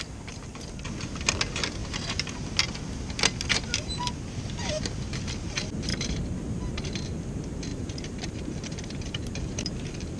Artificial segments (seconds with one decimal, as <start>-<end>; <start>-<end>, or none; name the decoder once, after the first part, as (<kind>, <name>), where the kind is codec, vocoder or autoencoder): 1.8-2.5 (vocoder, BigVGAN v2); 5.9-6.6; 7.7-10.2